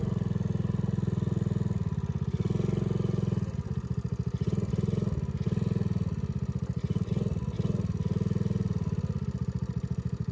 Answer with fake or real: real